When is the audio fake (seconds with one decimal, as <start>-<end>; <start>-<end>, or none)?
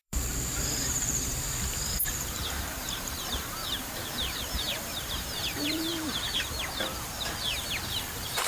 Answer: 0.0-5.9; 7.9-8.5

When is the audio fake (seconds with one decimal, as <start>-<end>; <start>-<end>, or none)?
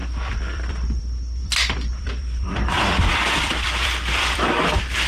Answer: 0.0-1.0; 1.4-4.5